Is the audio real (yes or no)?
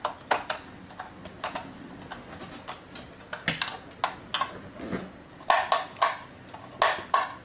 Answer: yes